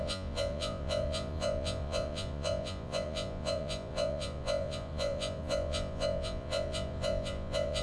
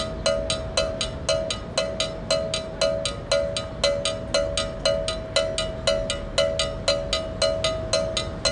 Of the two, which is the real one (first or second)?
second